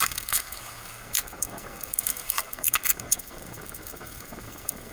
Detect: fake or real fake